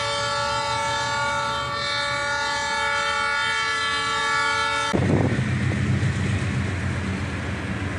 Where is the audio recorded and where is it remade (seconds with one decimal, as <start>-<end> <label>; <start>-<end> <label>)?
0.0-8.0 recorded